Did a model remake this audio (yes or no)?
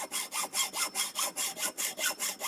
no